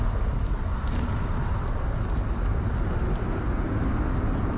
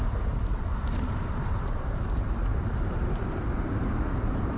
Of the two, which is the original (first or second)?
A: first